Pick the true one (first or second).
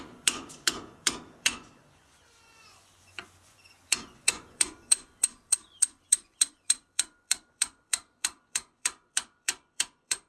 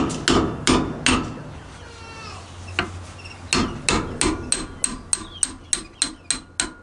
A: second